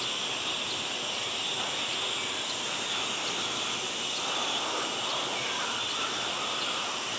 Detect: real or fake real